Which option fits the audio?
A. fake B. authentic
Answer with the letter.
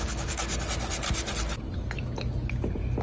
B